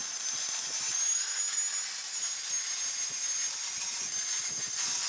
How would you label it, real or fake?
real